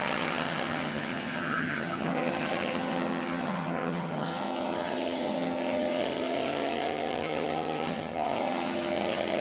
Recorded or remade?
remade